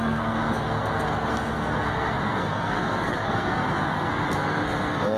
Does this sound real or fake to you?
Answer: fake